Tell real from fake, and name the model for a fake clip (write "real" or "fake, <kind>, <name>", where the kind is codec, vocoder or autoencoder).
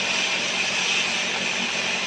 real